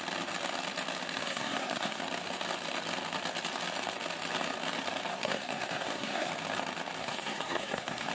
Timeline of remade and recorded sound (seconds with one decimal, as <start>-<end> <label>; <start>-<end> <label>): 0.0-1.2 recorded; 1.2-2.0 remade; 2.0-5.1 recorded; 5.1-6.3 remade; 6.3-7.0 recorded; 7.0-8.1 remade